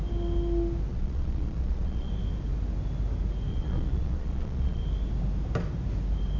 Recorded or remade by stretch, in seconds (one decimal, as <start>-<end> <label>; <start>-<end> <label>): 0.0-0.9 recorded; 0.9-2.1 remade; 2.1-3.5 recorded; 3.5-4.8 remade; 4.8-6.4 recorded